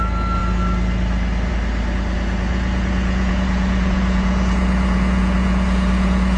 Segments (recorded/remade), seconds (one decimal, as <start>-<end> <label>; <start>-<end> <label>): 0.0-2.5 recorded; 2.5-6.4 remade